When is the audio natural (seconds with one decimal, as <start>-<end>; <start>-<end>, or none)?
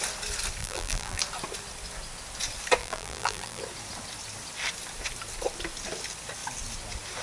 0.0-0.6; 1.2-2.8; 3.6-7.2